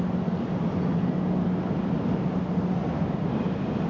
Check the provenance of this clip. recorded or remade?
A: recorded